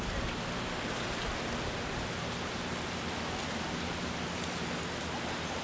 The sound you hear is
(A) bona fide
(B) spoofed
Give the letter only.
A